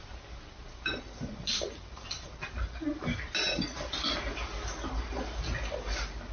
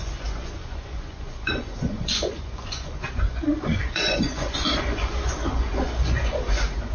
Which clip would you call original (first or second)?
first